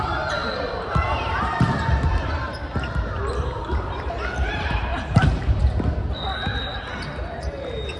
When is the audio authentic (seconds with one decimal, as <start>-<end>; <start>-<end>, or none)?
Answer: 0.4-1.2; 2.5-3.6; 4.9-8.0